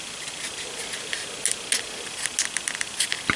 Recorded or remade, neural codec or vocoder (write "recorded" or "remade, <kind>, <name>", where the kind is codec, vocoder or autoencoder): recorded